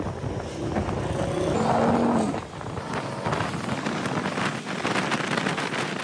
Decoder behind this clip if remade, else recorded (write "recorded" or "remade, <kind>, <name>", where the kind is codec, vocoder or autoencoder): recorded